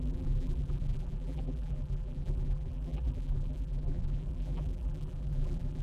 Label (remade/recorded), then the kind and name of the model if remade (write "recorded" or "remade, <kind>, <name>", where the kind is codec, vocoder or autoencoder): remade, vocoder, BigVGAN v2